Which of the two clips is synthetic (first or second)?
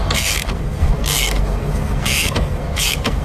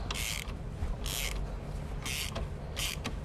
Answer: first